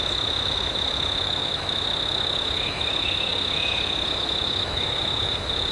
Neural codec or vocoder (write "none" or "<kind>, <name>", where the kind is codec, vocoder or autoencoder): autoencoder, DAC-VAE